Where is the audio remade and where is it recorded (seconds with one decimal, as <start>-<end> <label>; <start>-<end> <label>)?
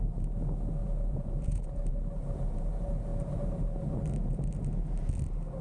0.0-0.8 recorded; 0.8-1.9 remade; 1.9-5.6 recorded